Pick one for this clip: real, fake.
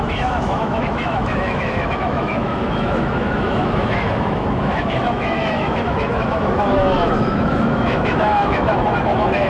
fake